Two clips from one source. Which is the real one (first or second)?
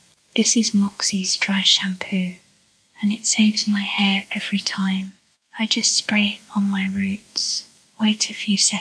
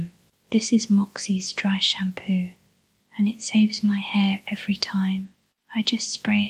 second